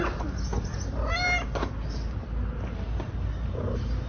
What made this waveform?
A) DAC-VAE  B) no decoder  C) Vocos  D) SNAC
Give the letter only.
B